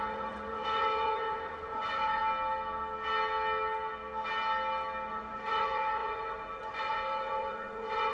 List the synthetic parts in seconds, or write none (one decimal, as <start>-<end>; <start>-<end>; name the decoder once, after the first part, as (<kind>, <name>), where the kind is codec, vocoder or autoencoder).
0.0-2.2 (vocoder, Vocos); 5.1-8.1